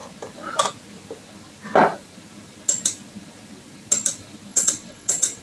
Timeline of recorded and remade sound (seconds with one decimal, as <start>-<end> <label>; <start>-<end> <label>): 0.0-4.5 recorded; 4.5-5.4 remade